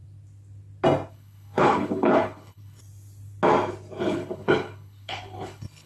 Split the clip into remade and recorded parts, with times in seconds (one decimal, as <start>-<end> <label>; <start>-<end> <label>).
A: 0.0-1.1 recorded; 1.1-2.8 remade; 2.8-4.0 recorded; 4.0-5.9 remade